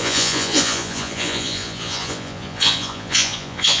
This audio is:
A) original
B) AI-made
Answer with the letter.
B